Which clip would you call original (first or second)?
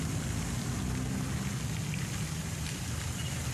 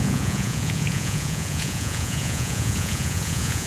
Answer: first